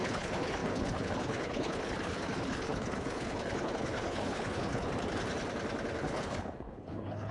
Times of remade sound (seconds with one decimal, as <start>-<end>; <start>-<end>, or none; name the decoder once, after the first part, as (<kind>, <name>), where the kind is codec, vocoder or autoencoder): 0.0-4.9 (codec, HILCodec); 6.0-7.3